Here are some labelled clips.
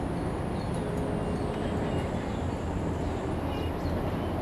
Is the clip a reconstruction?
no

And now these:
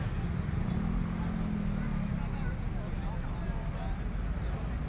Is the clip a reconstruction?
no